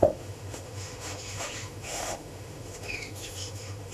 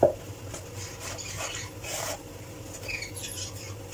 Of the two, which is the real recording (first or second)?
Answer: second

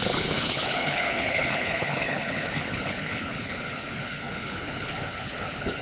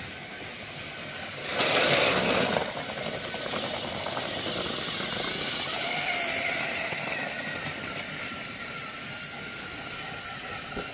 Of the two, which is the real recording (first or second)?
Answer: second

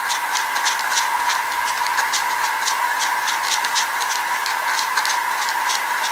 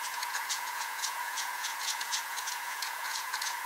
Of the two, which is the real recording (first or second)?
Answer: first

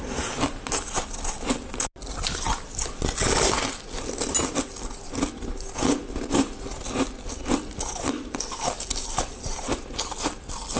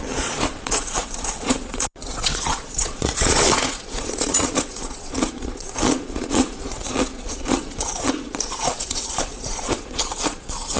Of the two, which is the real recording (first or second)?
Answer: first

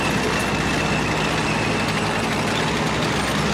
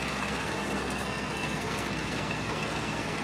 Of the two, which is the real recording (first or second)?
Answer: first